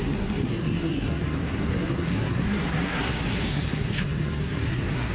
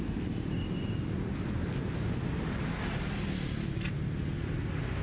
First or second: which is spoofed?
first